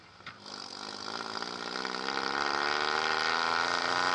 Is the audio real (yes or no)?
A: yes